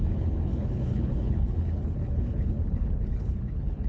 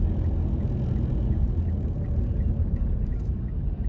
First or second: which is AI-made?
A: first